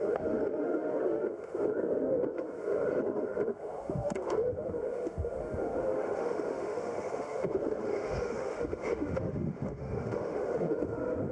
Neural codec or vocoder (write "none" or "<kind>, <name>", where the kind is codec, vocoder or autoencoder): autoencoder, DAC-VAE